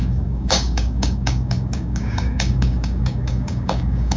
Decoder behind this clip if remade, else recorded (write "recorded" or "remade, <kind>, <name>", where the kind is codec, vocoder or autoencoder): remade, codec, DAC